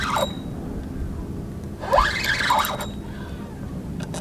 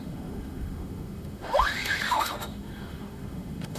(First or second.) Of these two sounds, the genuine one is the first